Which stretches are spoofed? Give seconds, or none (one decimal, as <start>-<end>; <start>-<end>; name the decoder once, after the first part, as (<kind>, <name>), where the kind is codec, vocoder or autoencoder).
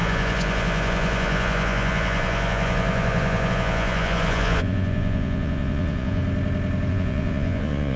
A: 0.0-6.2 (vocoder, Vocos); 6.9-8.0